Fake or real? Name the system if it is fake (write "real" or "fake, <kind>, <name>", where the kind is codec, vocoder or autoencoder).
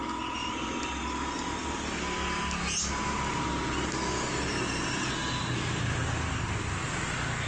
real